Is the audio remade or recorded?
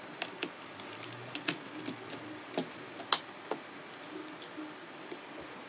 recorded